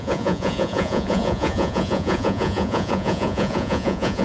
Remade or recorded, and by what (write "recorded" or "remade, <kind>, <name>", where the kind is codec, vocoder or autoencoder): remade, vocoder, Vocos